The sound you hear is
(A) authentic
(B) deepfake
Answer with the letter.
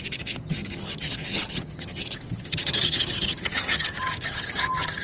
B